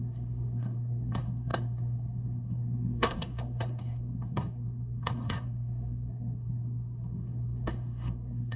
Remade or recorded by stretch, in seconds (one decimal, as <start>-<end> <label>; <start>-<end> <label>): 0.0-8.6 remade